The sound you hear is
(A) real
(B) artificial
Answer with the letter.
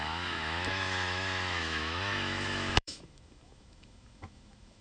B